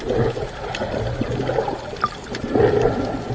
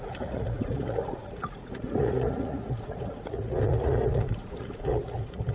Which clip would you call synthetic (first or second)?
second